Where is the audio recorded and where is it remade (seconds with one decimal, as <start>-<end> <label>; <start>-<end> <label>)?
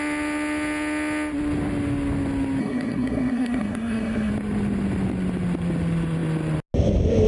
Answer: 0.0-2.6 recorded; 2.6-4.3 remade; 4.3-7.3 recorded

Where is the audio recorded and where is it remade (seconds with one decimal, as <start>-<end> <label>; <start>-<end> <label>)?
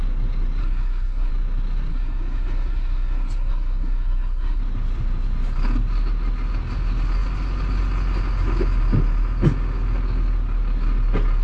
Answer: 0.0-0.6 recorded; 0.6-1.3 remade; 1.3-1.9 recorded; 1.9-4.6 remade; 4.6-11.4 recorded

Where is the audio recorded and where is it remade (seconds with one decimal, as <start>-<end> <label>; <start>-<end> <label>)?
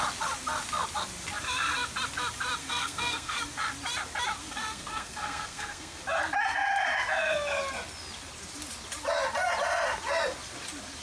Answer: 0.0-2.6 recorded; 2.6-3.4 remade; 3.4-4.4 recorded; 4.4-6.0 remade; 6.0-11.0 recorded